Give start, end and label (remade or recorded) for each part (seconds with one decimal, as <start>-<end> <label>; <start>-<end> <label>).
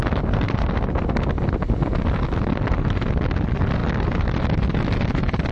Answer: 0.0-5.5 recorded